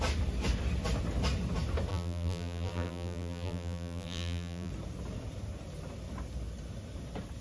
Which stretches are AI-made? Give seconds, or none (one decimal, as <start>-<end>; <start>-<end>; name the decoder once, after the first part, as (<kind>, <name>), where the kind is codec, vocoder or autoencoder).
1.9-4.7 (vocoder, BigVGAN v2)